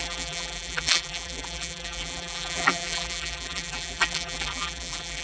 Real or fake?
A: fake